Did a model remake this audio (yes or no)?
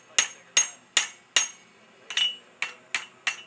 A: no